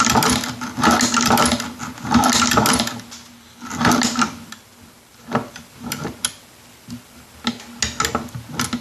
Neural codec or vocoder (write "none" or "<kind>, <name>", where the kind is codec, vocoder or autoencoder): none